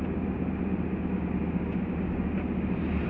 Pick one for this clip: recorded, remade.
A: recorded